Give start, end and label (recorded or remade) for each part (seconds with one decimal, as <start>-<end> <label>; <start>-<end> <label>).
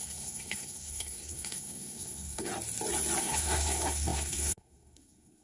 0.0-2.5 remade; 2.5-3.2 recorded; 3.2-5.4 remade